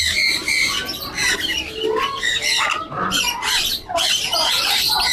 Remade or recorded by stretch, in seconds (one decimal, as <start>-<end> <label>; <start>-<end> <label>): 0.0-0.4 remade; 0.4-2.0 recorded; 2.0-5.1 remade

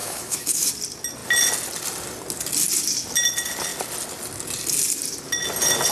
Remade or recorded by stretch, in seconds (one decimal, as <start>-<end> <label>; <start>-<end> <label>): 0.0-0.7 remade; 0.7-5.9 recorded

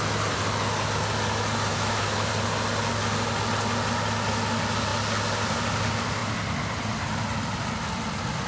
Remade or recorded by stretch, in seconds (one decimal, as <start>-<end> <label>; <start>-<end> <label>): 0.0-1.7 recorded; 1.7-2.3 remade; 2.3-8.5 recorded

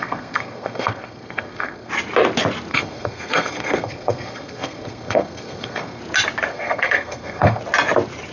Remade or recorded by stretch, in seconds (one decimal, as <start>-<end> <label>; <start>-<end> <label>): 0.0-1.9 remade; 1.9-2.7 recorded; 2.7-6.0 remade; 6.0-6.5 recorded; 6.5-7.6 remade; 7.6-8.3 recorded

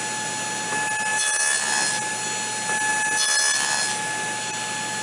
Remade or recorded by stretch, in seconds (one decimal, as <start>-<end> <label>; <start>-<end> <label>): 0.0-5.0 recorded